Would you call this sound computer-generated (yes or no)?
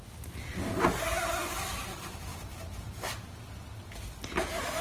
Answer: no